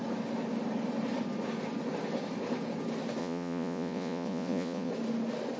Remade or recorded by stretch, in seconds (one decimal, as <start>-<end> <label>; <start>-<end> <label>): 0.0-3.2 recorded; 3.2-4.9 remade; 4.9-5.6 recorded